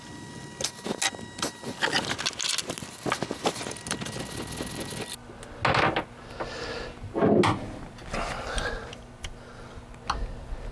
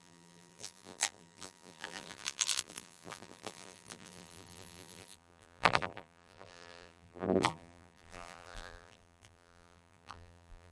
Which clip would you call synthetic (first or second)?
second